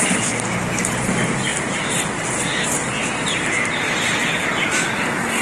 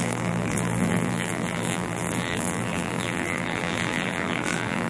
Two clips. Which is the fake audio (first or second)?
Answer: second